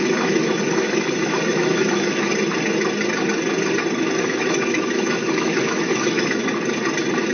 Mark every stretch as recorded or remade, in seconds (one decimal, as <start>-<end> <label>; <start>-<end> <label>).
0.0-2.3 remade; 2.3-4.2 recorded; 4.2-6.4 remade; 6.4-7.3 recorded